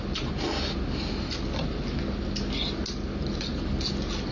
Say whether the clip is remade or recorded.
recorded